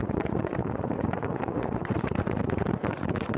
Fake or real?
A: fake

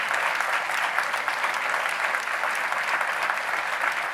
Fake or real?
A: fake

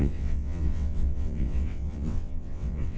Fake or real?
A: fake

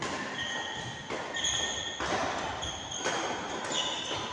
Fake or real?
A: real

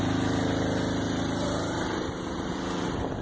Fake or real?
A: fake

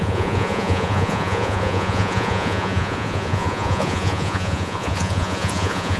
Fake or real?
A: fake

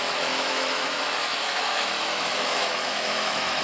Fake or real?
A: fake